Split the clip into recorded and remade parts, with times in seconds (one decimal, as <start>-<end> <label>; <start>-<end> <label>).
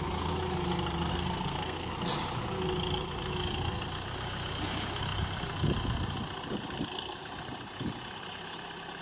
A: 0.0-1.1 recorded; 1.1-1.9 remade; 1.9-9.0 recorded